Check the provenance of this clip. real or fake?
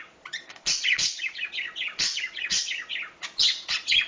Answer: fake